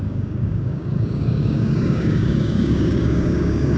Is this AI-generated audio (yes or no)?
yes